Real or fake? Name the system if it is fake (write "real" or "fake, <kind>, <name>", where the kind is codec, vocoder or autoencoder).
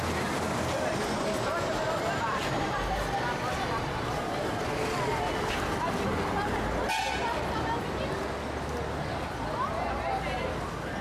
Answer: real